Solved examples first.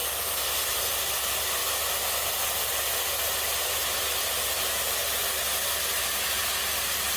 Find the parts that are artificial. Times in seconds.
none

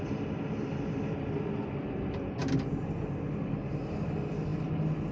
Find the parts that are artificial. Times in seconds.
none

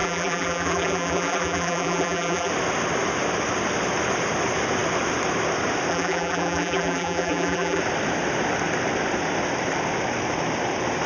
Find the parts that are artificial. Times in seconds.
0.0-2.5 (vocoder, BigVGAN v2); 5.9-7.8